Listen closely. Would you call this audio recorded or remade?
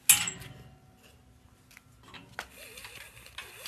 recorded